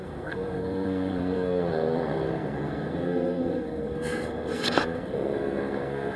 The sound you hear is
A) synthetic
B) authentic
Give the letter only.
A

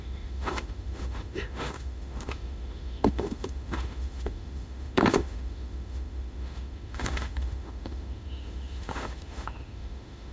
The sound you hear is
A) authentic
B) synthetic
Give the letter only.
B